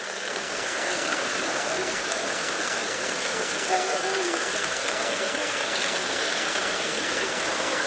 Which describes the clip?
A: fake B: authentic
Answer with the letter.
A